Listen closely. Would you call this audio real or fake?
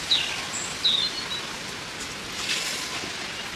real